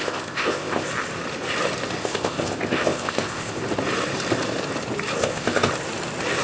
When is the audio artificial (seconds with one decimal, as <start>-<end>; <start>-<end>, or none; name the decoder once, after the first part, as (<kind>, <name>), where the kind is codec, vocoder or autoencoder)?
0.0-0.9 (codec, ZipCodec); 2.0-3.6; 5.2-5.7

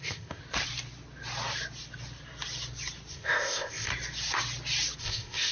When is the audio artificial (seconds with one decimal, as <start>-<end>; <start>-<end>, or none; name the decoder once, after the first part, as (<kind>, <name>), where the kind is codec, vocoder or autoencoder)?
0.0-0.4 (codec, ZipCodec); 3.1-3.9; 5.0-5.5

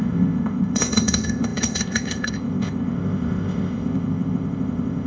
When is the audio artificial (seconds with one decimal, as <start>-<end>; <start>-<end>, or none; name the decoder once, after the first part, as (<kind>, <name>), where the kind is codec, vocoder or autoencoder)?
0.0-5.1 (codec, ZipCodec)

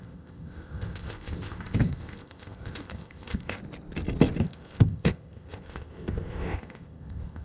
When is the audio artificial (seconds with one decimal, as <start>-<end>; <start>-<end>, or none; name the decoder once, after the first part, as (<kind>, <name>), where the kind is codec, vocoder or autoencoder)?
0.0-3.6 (codec, ZipCodec); 4.4-7.4

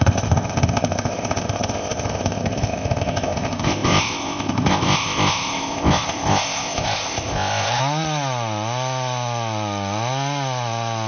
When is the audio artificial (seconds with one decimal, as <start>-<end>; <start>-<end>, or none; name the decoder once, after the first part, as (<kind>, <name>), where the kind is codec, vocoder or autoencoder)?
0.0-7.8 (codec, ZipCodec)

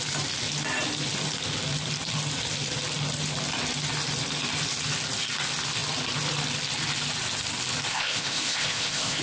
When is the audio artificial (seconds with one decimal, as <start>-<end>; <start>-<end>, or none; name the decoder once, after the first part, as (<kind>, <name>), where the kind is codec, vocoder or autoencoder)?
7.9-9.2 (codec, ZipCodec)